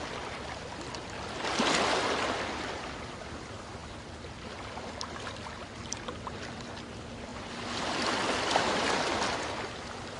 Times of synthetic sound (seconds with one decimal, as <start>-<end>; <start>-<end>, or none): none